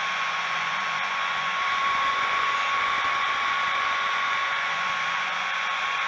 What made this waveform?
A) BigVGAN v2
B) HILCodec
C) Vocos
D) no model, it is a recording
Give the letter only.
C